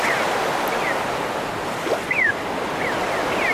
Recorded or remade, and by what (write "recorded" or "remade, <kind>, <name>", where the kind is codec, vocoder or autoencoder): recorded